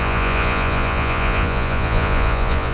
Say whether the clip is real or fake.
fake